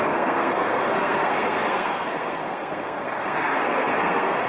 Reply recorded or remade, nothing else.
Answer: remade